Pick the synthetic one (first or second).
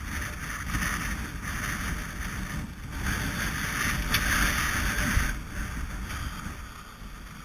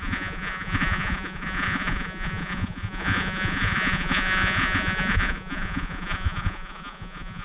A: second